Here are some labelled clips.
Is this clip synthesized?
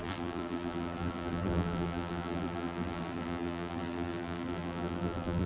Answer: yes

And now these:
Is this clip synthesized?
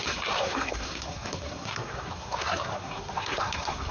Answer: yes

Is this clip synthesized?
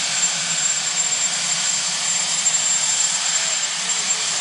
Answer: yes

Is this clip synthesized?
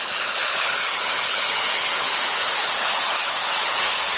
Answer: yes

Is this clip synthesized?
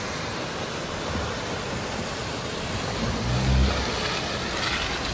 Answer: no